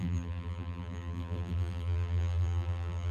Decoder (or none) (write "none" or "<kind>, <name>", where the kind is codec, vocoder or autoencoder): vocoder, BigVGAN v2